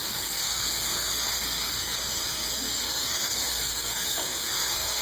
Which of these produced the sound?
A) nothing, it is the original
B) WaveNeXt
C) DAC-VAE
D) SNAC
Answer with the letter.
D